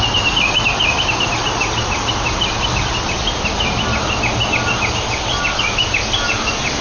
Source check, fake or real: real